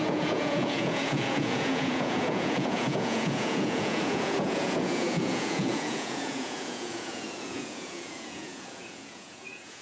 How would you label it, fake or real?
fake